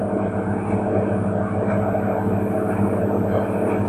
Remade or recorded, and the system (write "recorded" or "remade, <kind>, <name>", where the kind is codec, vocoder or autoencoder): recorded